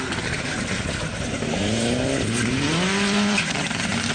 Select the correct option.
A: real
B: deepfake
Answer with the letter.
A